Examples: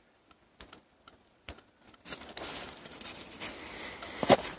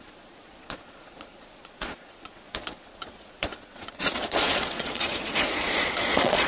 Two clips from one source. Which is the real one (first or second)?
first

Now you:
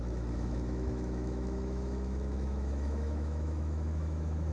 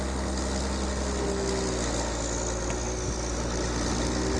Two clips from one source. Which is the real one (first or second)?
second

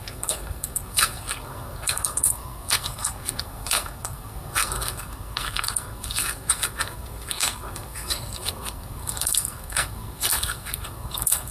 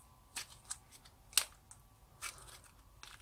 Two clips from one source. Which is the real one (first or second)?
second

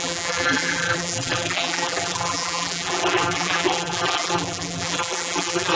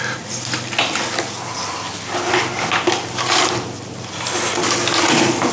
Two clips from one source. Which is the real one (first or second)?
second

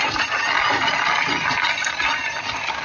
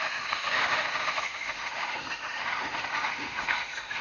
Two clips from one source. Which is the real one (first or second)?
first